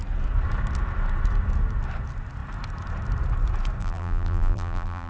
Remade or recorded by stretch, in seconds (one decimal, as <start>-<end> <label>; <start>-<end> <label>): 0.0-3.8 recorded; 3.8-5.1 remade